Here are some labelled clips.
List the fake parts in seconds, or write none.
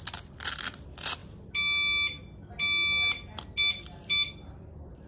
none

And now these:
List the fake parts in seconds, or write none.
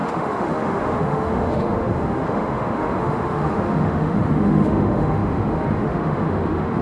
0.0-6.8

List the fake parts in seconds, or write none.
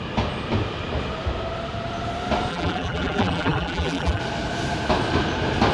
2.5-4.2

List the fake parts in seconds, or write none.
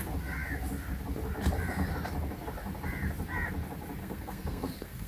4.0-5.1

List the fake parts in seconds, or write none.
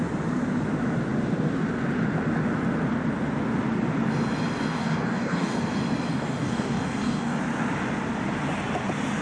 4.7-5.6; 6.1-7.4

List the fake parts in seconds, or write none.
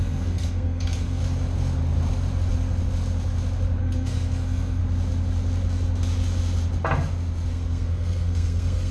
0.0-1.2; 3.8-4.8; 7.5-8.9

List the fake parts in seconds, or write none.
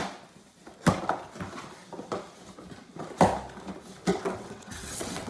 4.1-5.3